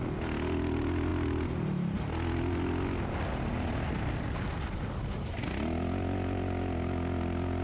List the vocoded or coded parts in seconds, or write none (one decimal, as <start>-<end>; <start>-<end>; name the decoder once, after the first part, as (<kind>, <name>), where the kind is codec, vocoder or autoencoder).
none